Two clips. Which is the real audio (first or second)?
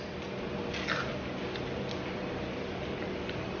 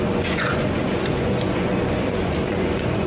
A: first